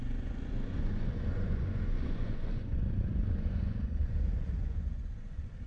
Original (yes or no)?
no